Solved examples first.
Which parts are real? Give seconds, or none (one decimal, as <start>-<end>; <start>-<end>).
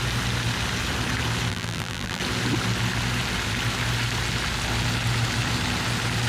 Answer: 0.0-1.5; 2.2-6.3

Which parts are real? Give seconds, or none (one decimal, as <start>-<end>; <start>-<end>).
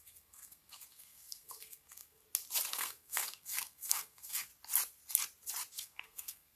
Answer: 2.2-2.7; 4.5-5.7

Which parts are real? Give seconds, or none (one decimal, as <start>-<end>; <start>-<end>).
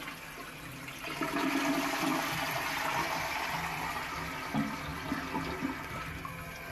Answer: 0.0-6.7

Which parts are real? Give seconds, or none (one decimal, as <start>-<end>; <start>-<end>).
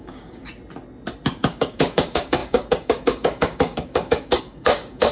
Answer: 0.5-1.5